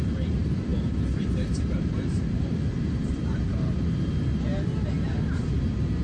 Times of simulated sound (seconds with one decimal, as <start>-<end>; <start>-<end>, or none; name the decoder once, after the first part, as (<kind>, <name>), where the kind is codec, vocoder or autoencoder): 0.0-4.5 (vocoder, BigVGAN v2); 5.2-6.0